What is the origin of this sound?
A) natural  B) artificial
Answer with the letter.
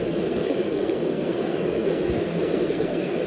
B